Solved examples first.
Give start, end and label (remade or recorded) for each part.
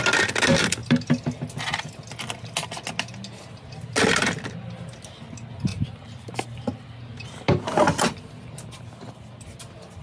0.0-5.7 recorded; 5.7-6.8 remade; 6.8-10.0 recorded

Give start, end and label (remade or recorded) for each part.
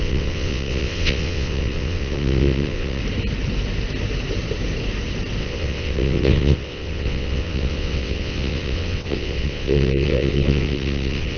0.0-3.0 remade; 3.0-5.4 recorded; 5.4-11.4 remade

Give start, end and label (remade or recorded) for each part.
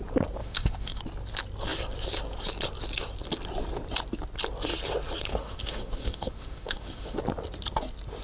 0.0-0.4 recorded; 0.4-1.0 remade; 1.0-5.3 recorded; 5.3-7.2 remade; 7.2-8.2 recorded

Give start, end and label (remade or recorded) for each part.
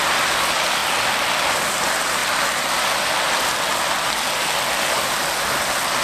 0.0-6.0 recorded